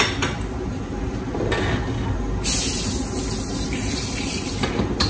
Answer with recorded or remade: recorded